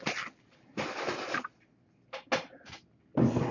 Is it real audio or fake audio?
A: real